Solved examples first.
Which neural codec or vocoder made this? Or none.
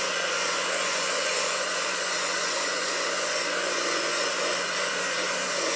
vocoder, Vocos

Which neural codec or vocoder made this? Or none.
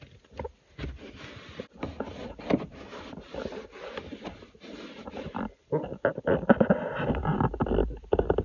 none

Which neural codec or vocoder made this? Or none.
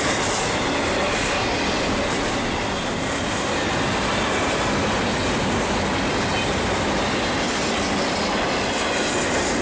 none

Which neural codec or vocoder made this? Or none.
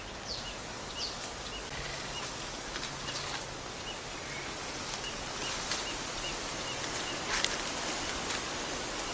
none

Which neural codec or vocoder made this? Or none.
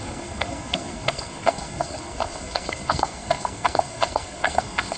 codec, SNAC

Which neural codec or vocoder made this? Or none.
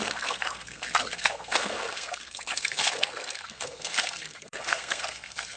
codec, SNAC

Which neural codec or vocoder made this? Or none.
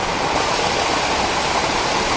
none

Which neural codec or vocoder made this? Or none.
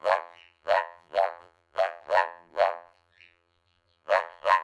vocoder, BigVGAN v2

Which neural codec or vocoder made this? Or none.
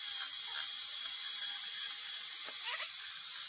none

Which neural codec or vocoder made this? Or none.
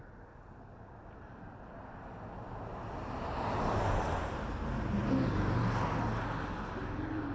none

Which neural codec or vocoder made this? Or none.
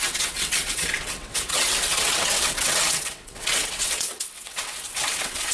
vocoder, WaveNeXt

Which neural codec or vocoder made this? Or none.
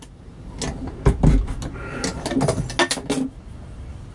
none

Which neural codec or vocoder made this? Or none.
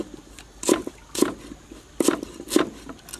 none